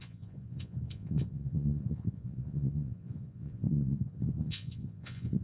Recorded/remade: remade